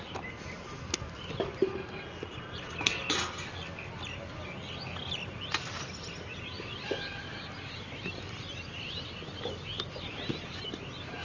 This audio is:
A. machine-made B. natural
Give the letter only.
B